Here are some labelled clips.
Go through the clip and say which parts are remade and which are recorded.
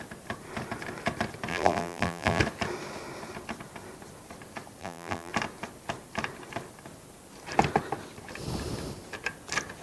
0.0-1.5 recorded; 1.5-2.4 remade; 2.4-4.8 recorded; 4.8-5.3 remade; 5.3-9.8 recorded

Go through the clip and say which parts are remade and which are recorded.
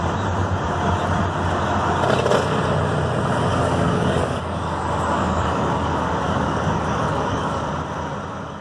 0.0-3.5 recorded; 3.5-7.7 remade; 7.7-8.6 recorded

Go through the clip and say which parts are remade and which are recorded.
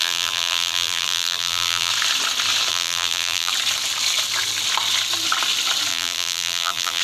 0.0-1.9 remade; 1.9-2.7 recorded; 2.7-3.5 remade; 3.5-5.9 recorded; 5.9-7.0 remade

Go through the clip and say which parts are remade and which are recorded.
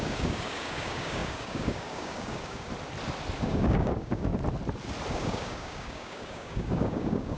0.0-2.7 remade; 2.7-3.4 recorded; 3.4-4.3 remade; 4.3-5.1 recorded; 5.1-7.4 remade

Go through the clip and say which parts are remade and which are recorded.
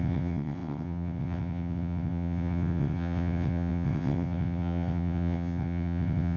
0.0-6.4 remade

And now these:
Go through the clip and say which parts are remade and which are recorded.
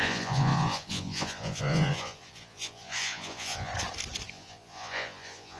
0.0-3.7 remade; 3.7-4.3 recorded; 4.3-5.6 remade